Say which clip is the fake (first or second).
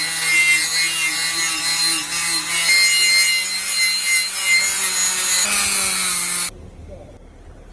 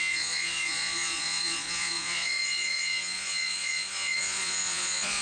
second